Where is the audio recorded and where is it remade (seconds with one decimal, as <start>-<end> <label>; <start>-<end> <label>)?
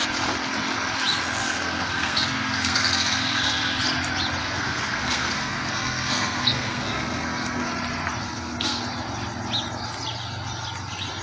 0.0-1.4 recorded; 1.4-3.8 remade; 3.8-4.4 recorded; 4.4-7.7 remade; 7.7-8.2 recorded; 8.2-8.8 remade; 8.8-11.2 recorded